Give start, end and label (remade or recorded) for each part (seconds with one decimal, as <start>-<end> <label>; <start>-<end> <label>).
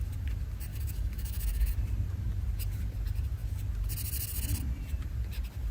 0.0-0.7 recorded; 0.7-1.7 remade; 1.7-5.7 recorded